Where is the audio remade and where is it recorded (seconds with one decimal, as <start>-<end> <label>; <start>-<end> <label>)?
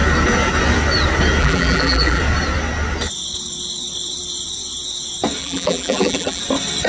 0.0-1.4 recorded; 1.4-2.2 remade; 2.2-5.4 recorded; 5.4-6.4 remade; 6.4-6.9 recorded